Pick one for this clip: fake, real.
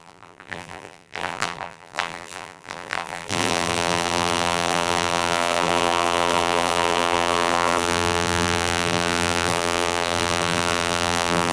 fake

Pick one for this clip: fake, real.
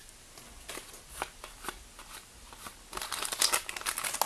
real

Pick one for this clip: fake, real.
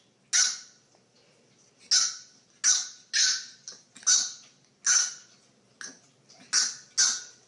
real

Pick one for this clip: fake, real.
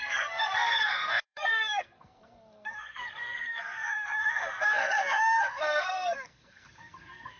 fake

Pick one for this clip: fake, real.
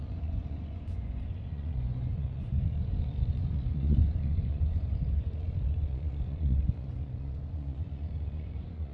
fake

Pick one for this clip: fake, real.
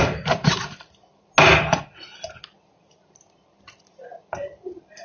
real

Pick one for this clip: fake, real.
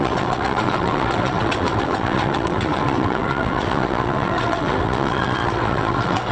fake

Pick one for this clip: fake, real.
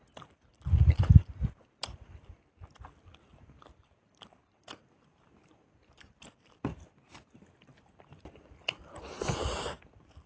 real